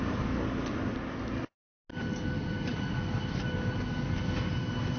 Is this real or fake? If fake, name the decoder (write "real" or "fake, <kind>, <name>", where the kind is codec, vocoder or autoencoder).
real